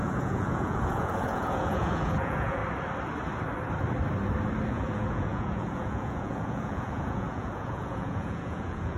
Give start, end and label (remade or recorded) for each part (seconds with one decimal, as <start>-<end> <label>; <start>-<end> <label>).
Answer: 0.0-2.6 remade; 2.6-4.7 recorded; 4.7-9.0 remade